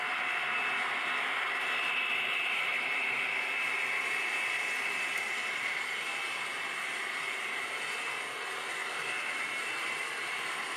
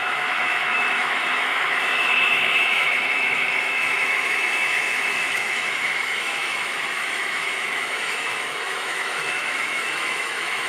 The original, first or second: first